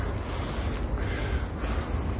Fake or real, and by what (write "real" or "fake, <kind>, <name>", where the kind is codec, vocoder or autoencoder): real